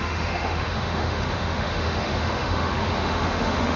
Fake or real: fake